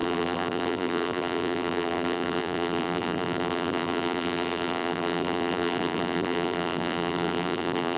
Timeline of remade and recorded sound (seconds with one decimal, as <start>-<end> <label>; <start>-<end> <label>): 0.0-8.0 remade